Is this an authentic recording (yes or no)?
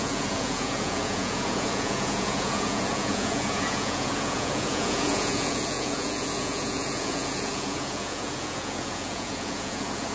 no